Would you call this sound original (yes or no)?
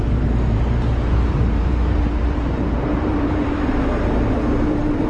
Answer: no